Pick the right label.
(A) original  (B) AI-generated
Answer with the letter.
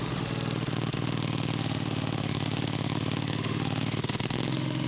B